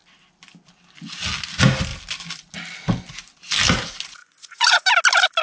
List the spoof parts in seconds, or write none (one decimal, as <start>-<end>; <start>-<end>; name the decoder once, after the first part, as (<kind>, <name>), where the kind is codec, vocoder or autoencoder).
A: 4.2-4.8 (vocoder, Vocos)